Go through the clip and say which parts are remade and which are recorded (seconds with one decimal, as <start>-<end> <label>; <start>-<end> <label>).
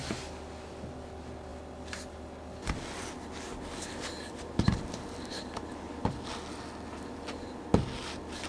0.0-8.5 recorded